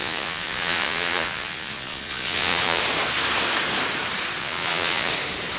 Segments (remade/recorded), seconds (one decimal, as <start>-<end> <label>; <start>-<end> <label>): 0.0-2.8 remade; 2.8-4.4 recorded; 4.4-5.1 remade; 5.1-5.6 recorded